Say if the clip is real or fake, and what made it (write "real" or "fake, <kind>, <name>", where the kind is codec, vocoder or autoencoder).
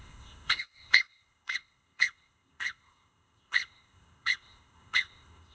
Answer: fake, codec, ZipCodec